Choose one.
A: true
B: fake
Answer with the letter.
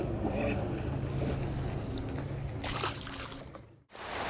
A